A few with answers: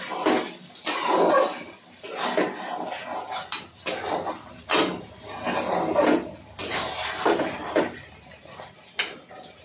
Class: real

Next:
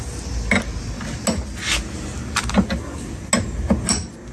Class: real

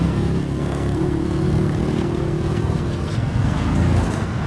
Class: fake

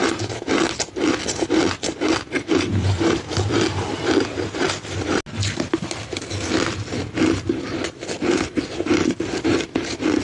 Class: real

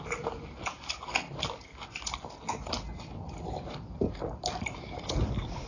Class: real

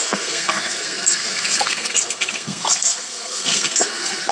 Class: fake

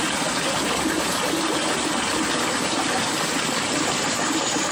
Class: real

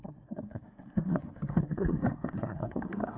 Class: fake